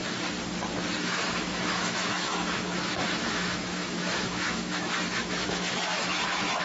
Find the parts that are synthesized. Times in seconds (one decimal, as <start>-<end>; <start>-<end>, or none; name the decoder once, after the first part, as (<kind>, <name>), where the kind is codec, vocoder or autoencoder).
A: 1.0-6.6 (autoencoder, DAC-VAE)